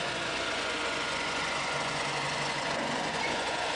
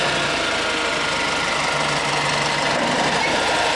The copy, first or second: first